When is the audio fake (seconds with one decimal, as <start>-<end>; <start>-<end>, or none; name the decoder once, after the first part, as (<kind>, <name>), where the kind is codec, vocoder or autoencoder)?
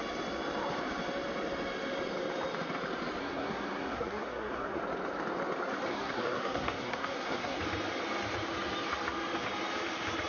3.2-4.8 (codec, SNAC); 5.9-7.6